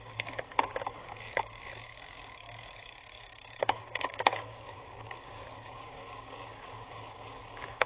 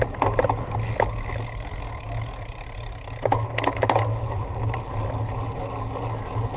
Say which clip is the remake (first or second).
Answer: first